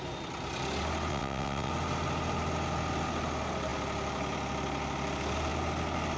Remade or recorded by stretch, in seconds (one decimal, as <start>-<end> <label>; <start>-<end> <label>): 0.0-1.1 recorded; 1.1-1.7 remade; 1.7-6.2 recorded